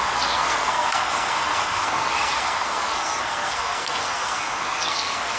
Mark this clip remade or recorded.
remade